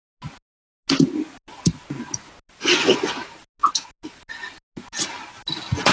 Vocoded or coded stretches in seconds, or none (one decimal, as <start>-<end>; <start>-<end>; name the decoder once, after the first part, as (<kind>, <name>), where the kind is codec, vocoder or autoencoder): none